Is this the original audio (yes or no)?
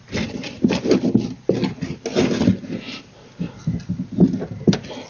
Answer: yes